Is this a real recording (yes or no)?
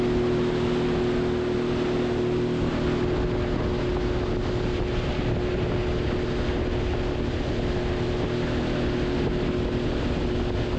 yes